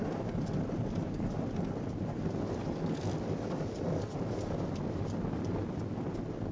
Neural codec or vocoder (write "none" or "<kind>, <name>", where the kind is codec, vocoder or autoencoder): none